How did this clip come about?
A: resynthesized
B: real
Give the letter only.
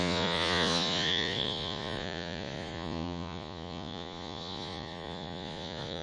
A